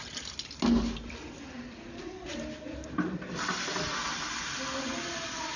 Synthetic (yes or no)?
no